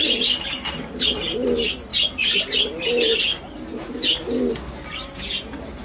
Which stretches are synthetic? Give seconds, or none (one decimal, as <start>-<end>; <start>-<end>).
none